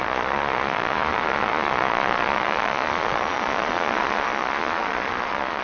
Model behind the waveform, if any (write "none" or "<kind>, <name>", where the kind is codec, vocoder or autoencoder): vocoder, Vocos